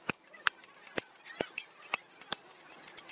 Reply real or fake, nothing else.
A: real